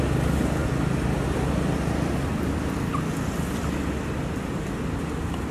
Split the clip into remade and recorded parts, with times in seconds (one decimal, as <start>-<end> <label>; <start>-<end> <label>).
0.0-5.5 recorded